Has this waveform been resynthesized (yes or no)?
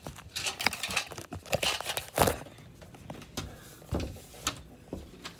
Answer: no